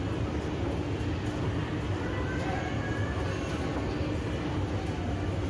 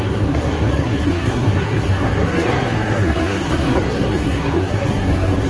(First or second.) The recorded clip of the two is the first